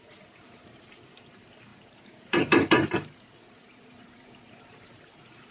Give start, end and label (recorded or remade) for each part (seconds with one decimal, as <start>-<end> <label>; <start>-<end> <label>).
0.0-5.5 remade